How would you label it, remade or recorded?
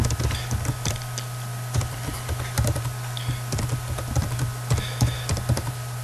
recorded